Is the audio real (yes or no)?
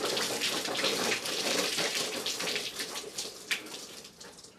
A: no